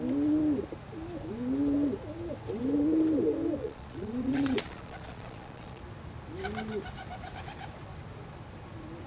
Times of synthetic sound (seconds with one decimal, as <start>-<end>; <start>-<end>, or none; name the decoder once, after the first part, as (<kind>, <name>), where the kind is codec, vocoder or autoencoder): 3.6-5.8 (vocoder, Vocos)